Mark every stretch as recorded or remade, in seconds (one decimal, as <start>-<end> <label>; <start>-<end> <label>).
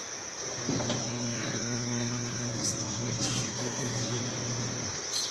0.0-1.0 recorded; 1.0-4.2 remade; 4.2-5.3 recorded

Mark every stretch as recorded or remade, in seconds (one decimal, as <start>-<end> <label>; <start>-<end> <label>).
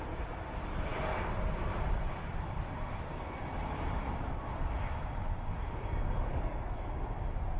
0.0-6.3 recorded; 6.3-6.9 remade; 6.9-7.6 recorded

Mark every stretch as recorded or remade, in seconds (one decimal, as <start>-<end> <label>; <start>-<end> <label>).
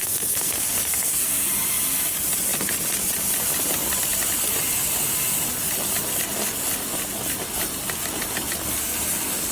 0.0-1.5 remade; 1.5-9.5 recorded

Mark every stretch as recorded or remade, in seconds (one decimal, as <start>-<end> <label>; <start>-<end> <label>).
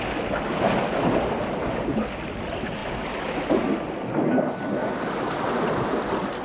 0.0-6.4 recorded